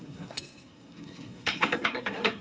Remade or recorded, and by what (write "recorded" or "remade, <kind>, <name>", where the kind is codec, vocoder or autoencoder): remade, codec, SNAC